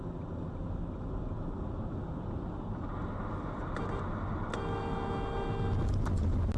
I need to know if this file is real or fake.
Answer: real